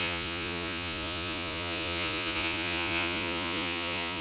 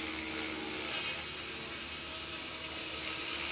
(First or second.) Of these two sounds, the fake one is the first